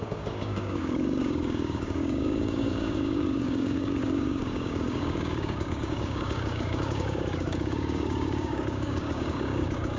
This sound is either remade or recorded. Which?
remade